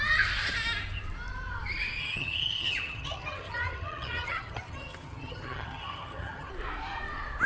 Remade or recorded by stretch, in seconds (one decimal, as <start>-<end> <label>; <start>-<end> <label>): 0.0-2.0 recorded; 2.0-6.5 remade; 6.5-7.5 recorded